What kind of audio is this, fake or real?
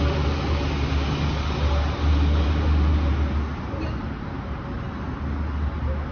real